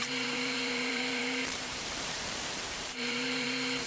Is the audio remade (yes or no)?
yes